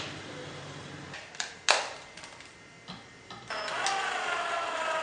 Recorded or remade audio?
recorded